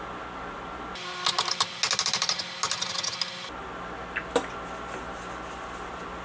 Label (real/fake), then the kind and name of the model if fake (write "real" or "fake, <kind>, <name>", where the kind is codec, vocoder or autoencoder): real